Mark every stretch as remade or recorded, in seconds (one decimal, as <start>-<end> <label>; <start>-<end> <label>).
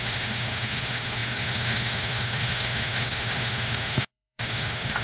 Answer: 0.0-5.0 remade